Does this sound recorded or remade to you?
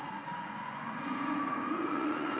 remade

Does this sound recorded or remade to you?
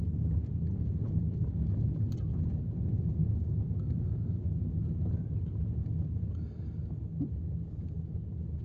recorded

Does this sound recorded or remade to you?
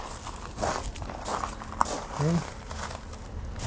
recorded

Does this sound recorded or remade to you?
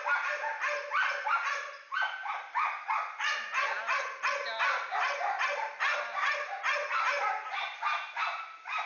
recorded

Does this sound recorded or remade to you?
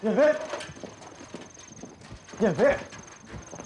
recorded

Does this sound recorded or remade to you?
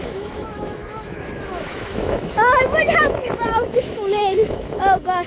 remade